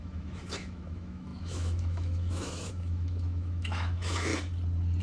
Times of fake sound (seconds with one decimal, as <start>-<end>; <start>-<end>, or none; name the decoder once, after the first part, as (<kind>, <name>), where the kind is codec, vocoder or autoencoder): 0.0-4.3 (autoencoder, DAC-VAE)